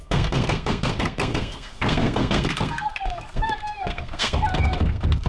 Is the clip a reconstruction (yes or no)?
yes